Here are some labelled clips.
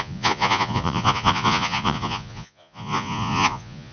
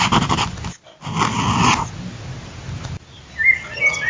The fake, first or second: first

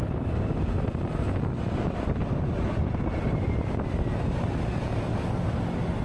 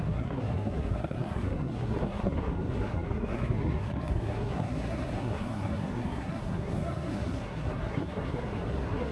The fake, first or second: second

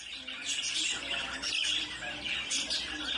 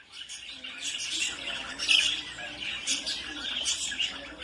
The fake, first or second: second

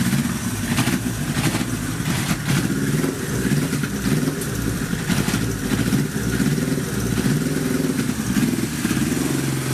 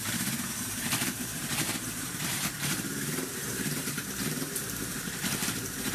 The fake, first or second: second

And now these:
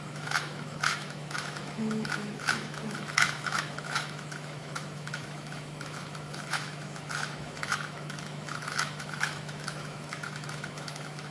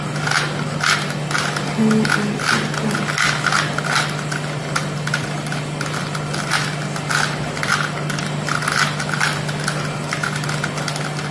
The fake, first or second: first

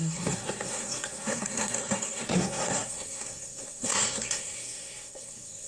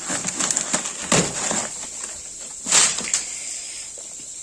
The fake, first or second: first